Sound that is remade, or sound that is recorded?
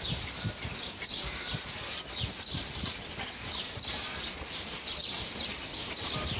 remade